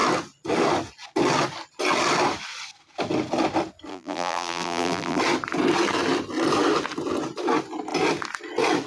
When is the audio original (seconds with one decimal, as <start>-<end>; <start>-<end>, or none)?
0.0-3.9; 5.2-8.9

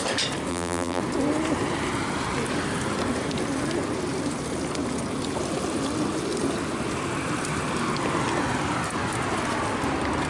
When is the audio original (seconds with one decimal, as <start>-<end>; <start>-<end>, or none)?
0.0-0.5; 1.0-10.3

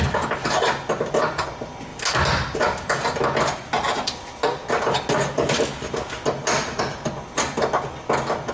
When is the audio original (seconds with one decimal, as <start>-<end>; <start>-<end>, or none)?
0.0-8.5

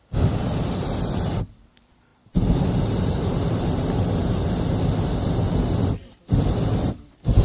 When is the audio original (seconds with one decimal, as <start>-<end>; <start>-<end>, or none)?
2.1-6.4